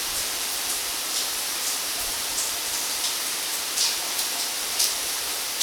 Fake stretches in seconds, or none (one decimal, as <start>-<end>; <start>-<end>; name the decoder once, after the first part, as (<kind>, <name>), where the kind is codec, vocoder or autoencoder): 0.0-5.6 (vocoder, BigVGAN v2)